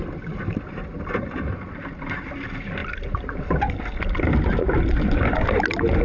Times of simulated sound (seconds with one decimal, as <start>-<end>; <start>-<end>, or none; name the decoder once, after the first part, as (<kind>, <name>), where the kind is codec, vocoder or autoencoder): none